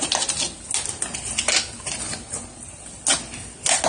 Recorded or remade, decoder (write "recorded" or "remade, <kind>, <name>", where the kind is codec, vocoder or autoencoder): recorded